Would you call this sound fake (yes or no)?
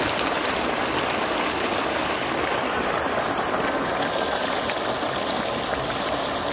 no